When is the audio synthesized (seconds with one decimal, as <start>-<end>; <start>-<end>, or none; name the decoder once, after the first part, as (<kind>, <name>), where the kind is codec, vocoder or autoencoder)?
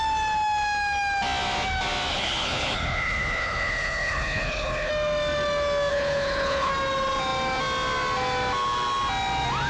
2.1-4.9 (codec, HILCodec); 5.9-6.7